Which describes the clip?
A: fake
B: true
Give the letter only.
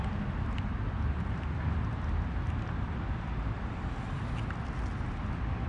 B